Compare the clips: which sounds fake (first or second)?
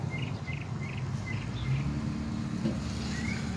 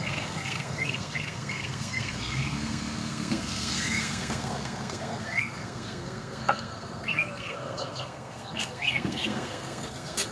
second